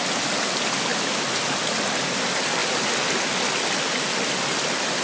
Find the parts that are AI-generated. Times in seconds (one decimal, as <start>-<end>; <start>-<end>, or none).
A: none